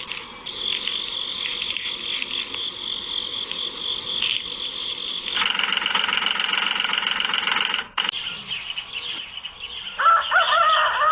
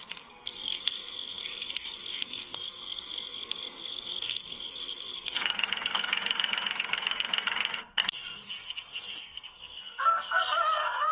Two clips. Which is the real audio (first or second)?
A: first